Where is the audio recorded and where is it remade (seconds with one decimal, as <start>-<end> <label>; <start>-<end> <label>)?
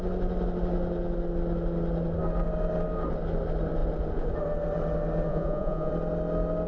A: 0.0-5.3 recorded; 5.3-5.9 remade; 5.9-6.7 recorded